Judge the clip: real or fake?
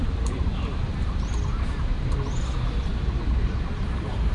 fake